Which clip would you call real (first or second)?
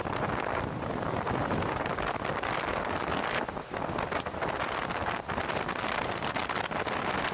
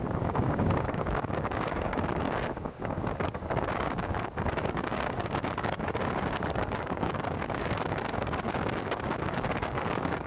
first